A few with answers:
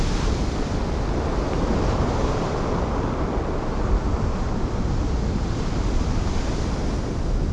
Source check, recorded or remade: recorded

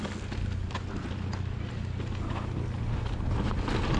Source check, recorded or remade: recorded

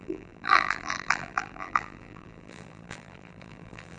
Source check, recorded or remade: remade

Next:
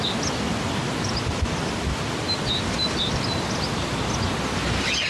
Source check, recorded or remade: recorded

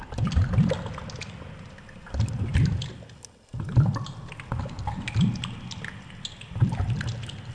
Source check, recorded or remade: recorded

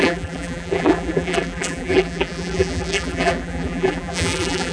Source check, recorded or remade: remade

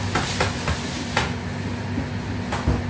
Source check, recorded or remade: recorded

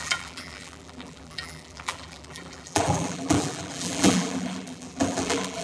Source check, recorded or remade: remade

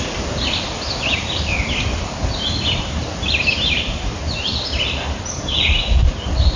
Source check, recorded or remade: remade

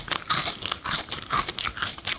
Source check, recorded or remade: remade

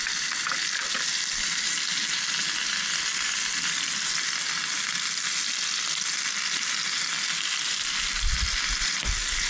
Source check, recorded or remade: recorded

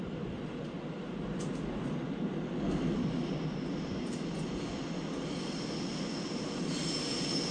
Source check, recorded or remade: recorded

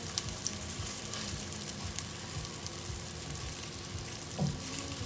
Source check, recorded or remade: remade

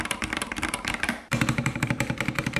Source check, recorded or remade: remade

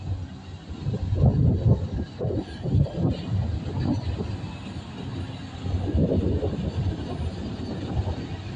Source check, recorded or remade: recorded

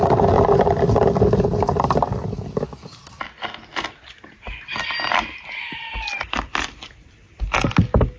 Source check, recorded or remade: recorded